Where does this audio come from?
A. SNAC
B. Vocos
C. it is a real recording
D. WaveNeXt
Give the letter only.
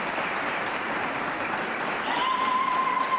C